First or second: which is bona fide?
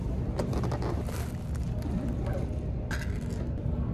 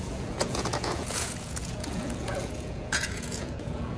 first